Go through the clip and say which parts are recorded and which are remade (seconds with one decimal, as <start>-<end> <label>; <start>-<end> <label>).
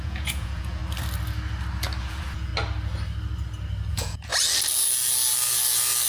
0.0-0.8 remade; 0.8-2.0 recorded; 2.0-2.5 remade; 2.5-3.9 recorded; 3.9-4.3 remade; 4.3-6.1 recorded